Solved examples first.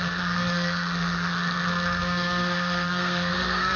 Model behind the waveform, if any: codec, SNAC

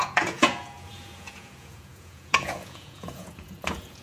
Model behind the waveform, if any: vocoder, Vocos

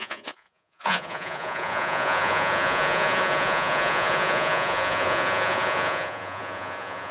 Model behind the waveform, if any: vocoder, Vocos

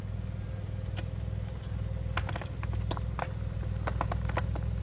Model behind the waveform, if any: none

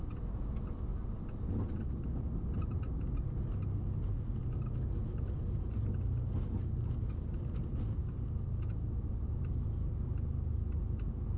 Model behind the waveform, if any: none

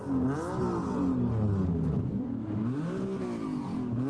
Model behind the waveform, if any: none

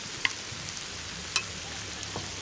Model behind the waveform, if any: none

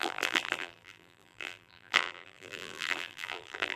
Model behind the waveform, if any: vocoder, BigVGAN v2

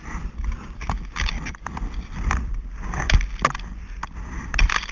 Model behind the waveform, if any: none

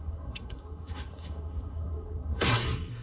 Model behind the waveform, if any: codec, SNAC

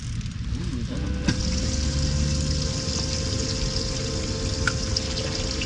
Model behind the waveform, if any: none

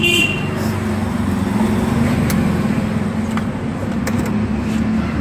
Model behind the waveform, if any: none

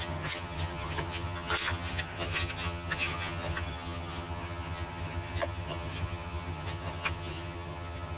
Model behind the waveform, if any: vocoder, HiFi-GAN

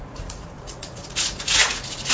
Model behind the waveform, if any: vocoder, Vocos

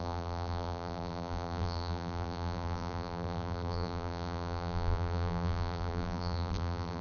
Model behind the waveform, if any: vocoder, BigVGAN v2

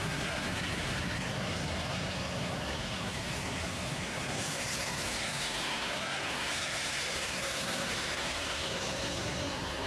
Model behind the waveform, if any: codec, SNAC